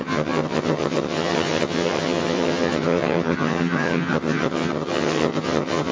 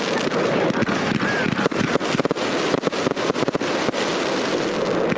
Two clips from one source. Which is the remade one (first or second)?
first